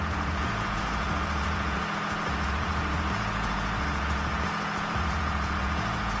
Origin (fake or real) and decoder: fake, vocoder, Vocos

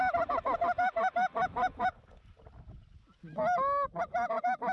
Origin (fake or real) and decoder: real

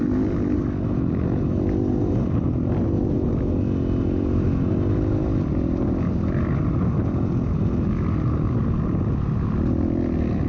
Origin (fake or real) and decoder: real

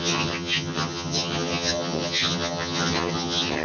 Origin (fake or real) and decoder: fake, vocoder, HiFi-GAN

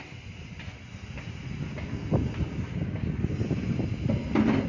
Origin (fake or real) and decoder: real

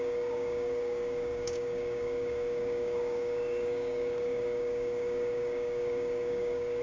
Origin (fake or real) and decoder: fake, codec, DAC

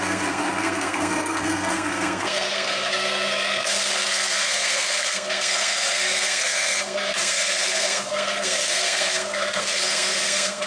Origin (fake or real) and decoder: fake, codec, SNAC